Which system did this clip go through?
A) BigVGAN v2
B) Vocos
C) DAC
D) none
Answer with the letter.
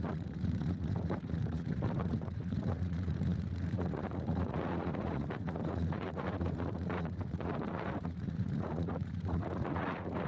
B